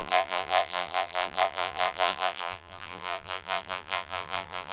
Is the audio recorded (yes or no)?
no